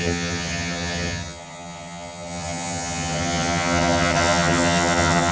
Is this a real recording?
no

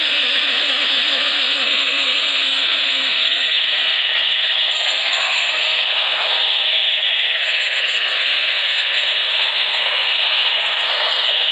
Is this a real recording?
no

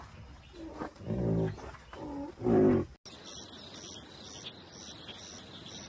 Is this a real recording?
yes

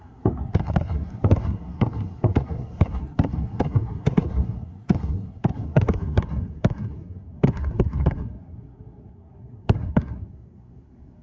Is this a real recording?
no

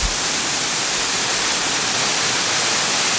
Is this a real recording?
yes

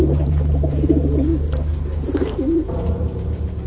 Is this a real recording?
no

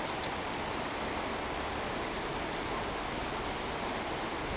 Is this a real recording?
yes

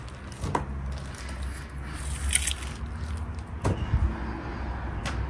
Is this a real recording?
yes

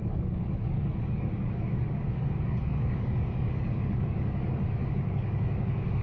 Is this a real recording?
no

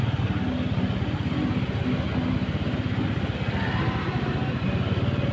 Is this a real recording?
yes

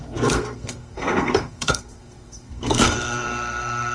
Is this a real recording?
no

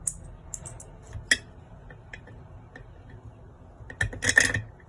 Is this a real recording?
yes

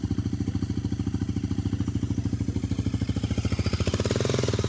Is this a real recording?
yes